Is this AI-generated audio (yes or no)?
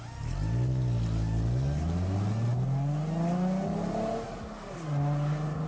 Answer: no